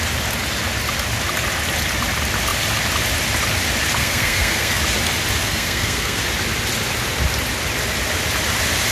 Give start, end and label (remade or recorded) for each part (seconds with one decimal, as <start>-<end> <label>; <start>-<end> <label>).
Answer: 0.0-4.0 recorded; 4.0-4.8 remade; 4.8-5.4 recorded; 5.4-6.2 remade; 6.2-8.9 recorded